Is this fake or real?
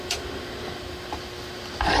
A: real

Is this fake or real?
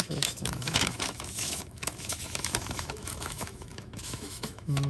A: fake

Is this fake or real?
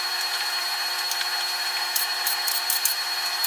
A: fake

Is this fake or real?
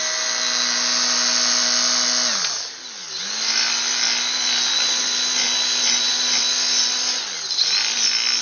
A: real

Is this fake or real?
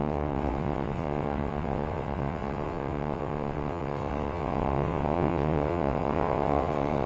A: fake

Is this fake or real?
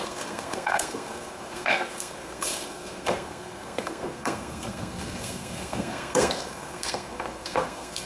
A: fake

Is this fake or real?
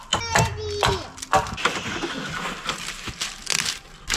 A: real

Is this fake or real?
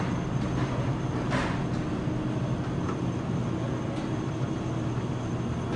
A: real